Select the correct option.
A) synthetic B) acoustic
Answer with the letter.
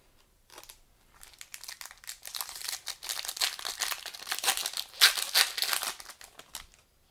B